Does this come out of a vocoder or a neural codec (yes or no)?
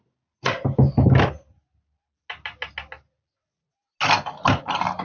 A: no